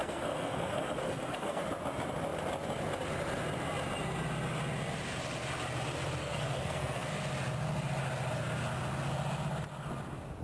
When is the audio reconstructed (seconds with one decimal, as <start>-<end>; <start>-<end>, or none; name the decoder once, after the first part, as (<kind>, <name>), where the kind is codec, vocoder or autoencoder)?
0.0-1.6 (codec, SNAC); 6.2-7.1